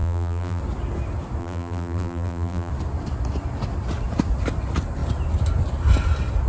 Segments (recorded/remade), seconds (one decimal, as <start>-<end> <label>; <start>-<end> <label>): 0.0-0.6 remade; 0.6-1.4 recorded; 1.4-2.7 remade; 2.7-6.5 recorded